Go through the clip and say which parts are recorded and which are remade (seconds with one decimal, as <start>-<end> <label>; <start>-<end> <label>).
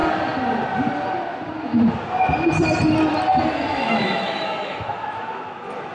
0.0-3.7 recorded; 3.7-5.9 remade